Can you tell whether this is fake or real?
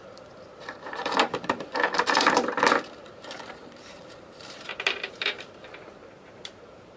fake